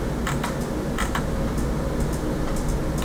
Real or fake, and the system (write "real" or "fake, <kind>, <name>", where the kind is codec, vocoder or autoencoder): real